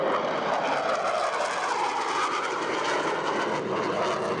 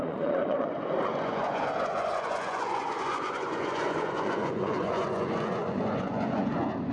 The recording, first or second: first